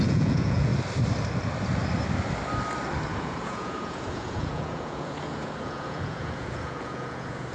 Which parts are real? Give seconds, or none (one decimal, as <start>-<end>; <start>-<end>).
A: 0.7-3.2